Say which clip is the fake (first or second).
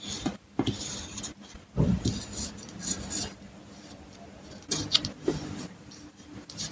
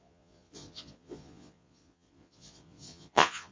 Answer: second